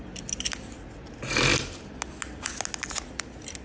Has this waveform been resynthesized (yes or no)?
no